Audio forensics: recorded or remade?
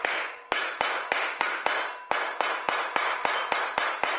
recorded